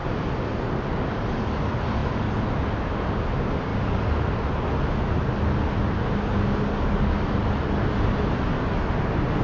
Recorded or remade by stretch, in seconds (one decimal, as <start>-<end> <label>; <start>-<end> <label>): 0.0-9.4 recorded